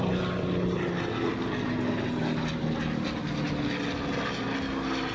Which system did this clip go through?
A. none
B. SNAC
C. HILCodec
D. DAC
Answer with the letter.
A